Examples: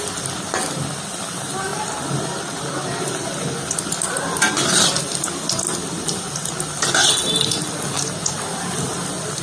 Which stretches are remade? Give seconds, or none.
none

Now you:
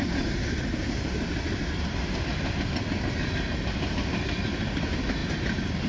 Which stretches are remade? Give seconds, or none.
none

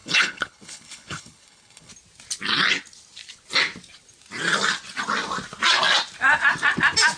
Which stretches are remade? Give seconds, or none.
0.0-1.9 (codec, HILCodec)

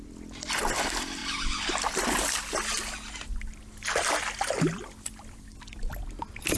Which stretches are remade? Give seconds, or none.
none

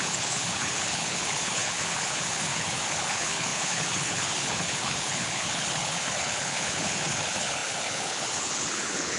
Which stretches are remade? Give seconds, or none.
0.0-9.2 (codec, HILCodec)